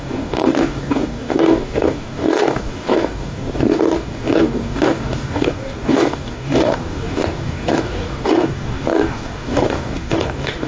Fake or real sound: fake